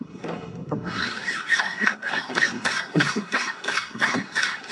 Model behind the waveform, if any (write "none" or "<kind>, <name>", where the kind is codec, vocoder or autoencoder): codec, SNAC